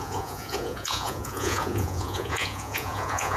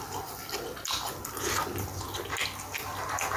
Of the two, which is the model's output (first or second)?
first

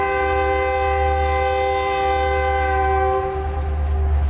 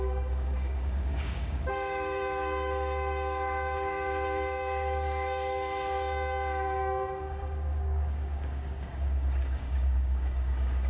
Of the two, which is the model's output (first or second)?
second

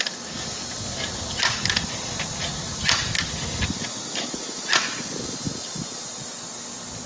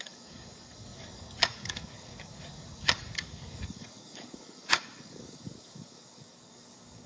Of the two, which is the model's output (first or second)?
second